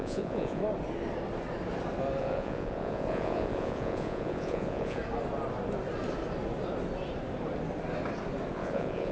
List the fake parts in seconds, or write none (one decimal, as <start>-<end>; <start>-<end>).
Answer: 0.0-0.6; 2.2-5.0; 8.5-9.1